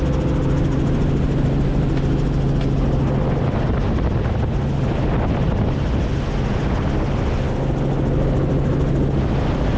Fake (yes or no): no